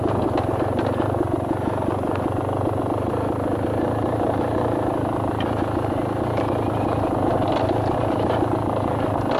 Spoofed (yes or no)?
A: no